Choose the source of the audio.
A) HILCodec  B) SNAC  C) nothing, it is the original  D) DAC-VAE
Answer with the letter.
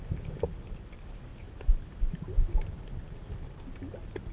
C